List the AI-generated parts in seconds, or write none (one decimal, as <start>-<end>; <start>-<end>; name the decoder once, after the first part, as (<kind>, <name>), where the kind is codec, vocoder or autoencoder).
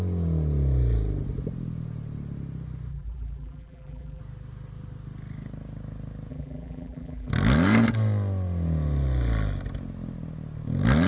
2.9-4.2 (vocoder, BigVGAN v2); 6.3-7.3